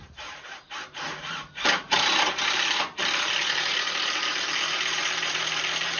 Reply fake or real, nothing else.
fake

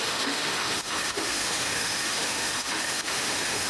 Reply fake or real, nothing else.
fake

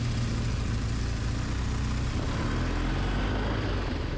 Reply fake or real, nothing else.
real